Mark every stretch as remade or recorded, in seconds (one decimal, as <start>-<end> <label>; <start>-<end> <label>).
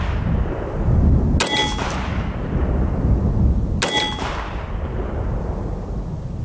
0.0-6.4 recorded